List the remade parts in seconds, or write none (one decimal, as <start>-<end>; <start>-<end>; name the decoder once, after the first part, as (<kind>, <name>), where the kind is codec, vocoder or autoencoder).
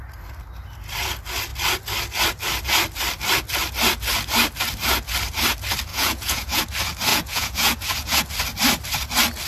5.9-6.6 (vocoder, Vocos); 7.1-8.2